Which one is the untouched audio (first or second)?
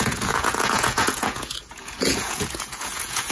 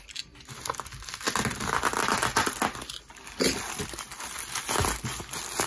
second